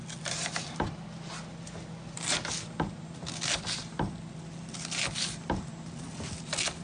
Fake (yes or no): no